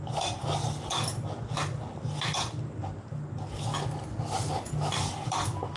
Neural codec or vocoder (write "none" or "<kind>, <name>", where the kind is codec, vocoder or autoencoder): none